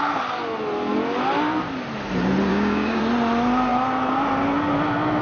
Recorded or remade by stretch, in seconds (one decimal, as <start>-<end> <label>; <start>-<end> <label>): 0.0-2.5 recorded; 2.5-3.0 remade; 3.0-5.2 recorded